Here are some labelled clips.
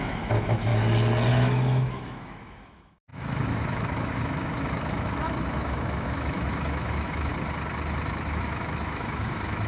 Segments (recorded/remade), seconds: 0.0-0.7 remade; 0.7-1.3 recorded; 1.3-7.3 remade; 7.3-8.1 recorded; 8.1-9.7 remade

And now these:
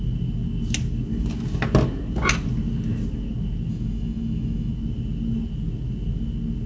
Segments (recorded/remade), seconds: 0.0-3.7 recorded; 3.7-4.7 remade; 4.7-6.7 recorded

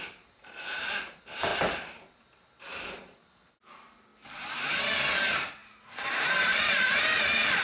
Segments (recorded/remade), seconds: 0.0-1.5 remade; 1.5-2.9 recorded; 2.9-4.1 remade; 4.1-5.1 recorded; 5.1-7.6 remade

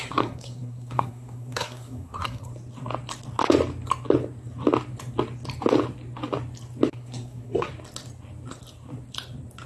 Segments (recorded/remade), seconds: 0.0-2.5 remade; 2.5-6.9 recorded; 6.9-7.7 remade; 7.7-9.7 recorded